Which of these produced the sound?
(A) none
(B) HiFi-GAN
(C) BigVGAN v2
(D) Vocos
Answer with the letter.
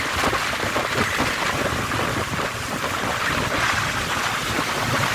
A